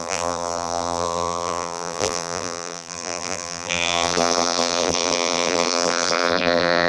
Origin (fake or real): fake